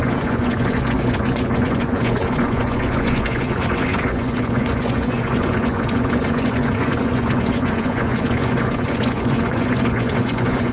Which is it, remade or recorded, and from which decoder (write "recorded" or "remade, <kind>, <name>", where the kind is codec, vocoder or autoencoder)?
remade, vocoder, Vocos